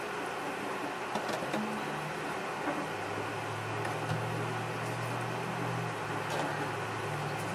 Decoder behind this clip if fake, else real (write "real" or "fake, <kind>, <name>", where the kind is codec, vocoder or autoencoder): real